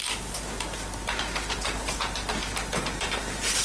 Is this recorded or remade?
remade